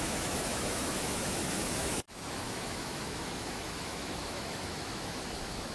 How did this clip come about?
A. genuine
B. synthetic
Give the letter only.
B